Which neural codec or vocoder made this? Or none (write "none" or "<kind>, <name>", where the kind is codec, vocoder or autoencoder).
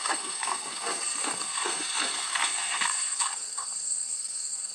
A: codec, SNAC